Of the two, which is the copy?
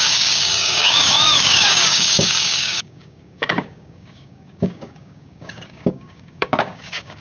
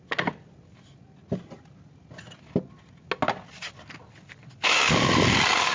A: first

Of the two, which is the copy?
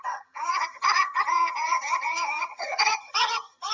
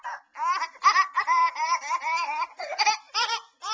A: first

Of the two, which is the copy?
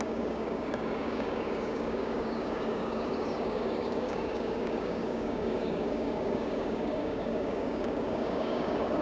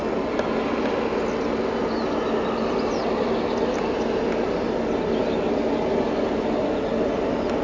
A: first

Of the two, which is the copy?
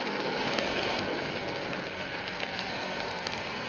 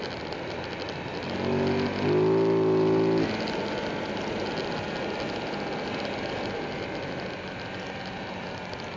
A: first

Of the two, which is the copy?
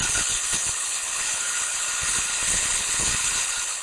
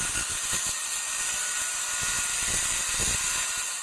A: first